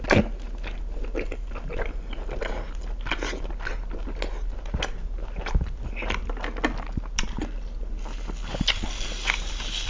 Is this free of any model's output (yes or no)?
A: yes